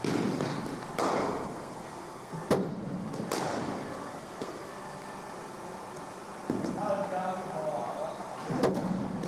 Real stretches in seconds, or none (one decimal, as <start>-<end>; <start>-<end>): 0.0-1.2; 2.3-4.1; 4.7-9.3